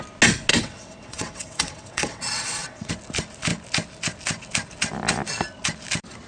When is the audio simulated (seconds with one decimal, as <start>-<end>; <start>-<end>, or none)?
0.5-2.9